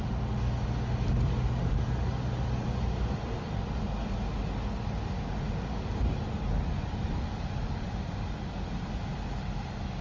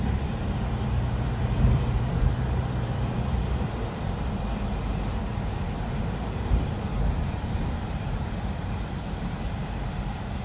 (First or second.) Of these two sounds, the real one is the first